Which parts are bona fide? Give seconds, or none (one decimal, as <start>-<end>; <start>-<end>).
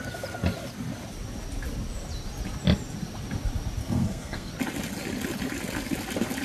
0.0-3.8; 4.5-6.4